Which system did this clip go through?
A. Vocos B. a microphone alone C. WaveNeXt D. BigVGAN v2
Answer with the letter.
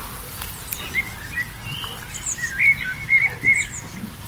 B